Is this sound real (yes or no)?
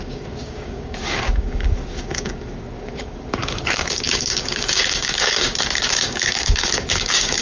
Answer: no